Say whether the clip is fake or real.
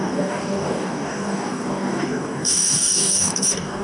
fake